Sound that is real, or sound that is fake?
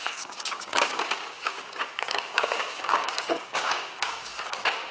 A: fake